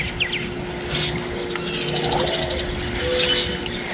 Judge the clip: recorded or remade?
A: recorded